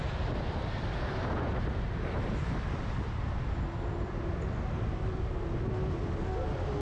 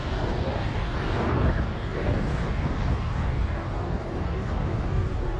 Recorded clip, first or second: first